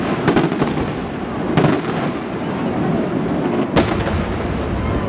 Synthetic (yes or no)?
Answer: no